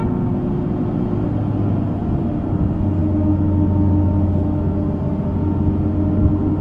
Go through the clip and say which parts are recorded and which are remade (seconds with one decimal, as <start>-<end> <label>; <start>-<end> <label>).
0.0-6.6 recorded